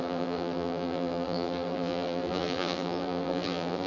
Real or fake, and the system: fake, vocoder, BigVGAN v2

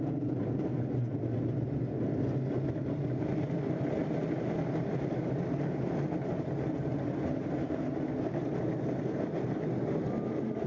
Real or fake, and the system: real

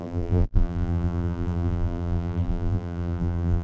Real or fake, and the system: fake, vocoder, BigVGAN v2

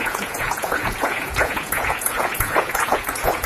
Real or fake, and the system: fake, vocoder, Vocos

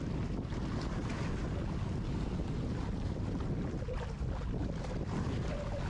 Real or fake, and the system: real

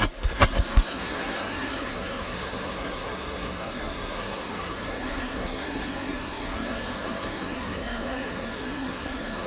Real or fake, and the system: fake, codec, SNAC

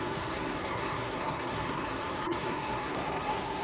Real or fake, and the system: fake, codec, SNAC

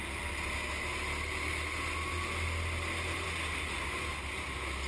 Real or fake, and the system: real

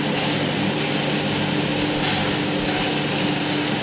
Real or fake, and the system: real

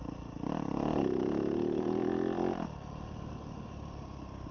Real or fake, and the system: real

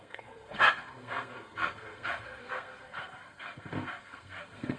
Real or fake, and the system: fake, codec, SNAC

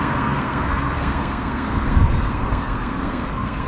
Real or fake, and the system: fake, codec, SNAC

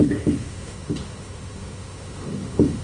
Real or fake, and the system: fake, autoencoder, DAC-VAE